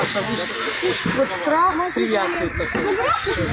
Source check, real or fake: real